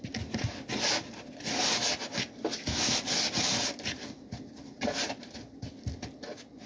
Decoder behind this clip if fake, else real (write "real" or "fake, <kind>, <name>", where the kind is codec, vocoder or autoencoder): real